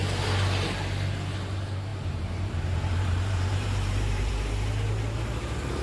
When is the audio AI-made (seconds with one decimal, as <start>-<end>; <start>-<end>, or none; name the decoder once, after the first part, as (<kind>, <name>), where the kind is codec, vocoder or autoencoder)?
1.9-4.3 (vocoder, BigVGAN v2)